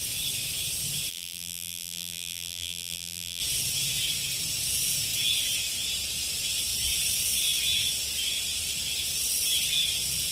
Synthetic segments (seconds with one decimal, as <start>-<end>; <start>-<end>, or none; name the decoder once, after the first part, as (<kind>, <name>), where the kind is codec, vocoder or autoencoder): 1.1-3.4 (vocoder, BigVGAN v2)